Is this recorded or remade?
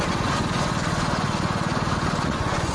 remade